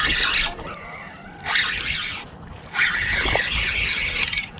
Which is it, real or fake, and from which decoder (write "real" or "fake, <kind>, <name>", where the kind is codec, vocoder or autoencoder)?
real